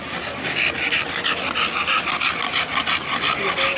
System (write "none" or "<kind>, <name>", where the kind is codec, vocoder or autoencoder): none